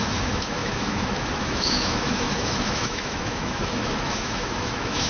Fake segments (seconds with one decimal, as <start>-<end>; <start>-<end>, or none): 0.0-5.1